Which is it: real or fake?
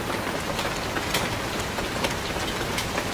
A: real